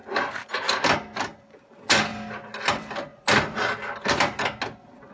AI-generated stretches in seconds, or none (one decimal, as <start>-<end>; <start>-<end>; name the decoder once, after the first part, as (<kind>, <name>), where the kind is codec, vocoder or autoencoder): none